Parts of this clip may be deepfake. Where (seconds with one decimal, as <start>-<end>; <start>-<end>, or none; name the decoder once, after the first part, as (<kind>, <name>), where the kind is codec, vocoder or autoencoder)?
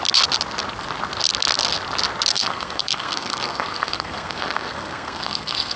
2.3-5.8 (codec, SNAC)